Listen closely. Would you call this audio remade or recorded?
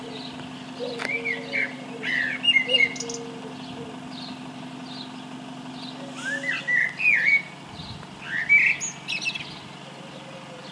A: recorded